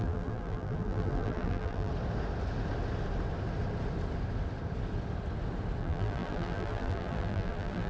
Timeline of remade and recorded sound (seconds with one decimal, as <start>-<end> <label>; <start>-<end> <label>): 0.0-1.9 remade; 1.9-5.8 recorded; 5.8-7.9 remade